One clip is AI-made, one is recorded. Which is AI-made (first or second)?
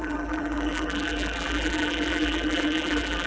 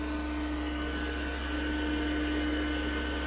first